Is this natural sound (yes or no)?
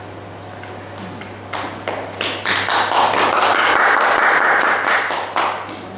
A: yes